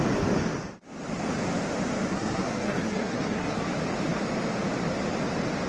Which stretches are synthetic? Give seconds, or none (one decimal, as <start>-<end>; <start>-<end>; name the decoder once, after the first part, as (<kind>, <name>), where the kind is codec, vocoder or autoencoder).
2.1-3.6 (codec, SNAC)

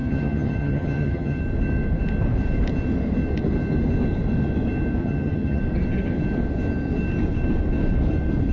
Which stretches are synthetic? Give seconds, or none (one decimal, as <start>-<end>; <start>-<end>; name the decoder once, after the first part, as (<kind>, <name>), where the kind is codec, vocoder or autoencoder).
0.0-1.4 (vocoder, HiFi-GAN); 5.0-5.6

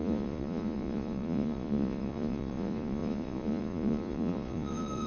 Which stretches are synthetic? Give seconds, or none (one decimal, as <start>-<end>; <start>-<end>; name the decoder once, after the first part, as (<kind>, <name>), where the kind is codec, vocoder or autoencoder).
0.0-5.1 (vocoder, Vocos)

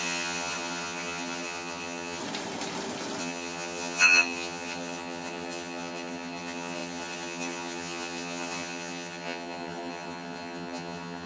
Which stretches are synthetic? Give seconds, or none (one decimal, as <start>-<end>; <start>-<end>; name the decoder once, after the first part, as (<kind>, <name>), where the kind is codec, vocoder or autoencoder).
0.0-2.2 (vocoder, HiFi-GAN); 3.2-11.3

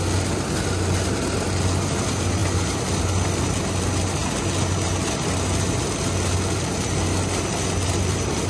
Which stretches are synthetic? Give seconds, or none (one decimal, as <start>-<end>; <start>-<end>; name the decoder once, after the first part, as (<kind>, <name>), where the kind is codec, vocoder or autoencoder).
none

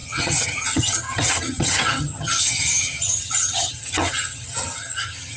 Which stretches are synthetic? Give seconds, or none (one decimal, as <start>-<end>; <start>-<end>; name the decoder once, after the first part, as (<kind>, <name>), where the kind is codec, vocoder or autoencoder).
0.0-5.4 (vocoder, HiFi-GAN)

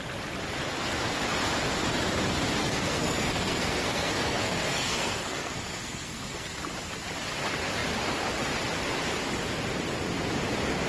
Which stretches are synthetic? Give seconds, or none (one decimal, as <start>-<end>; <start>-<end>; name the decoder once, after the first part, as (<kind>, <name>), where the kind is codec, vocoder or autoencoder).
2.6-6.6 (codec, SNAC)

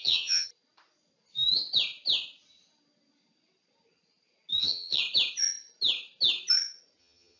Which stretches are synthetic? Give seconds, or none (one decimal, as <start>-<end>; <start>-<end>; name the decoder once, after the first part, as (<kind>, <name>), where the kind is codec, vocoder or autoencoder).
0.0-0.5 (vocoder, HiFi-GAN); 4.6-5.0; 7.0-7.4